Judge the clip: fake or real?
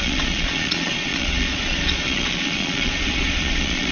fake